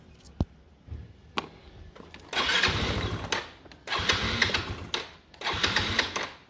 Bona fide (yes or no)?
yes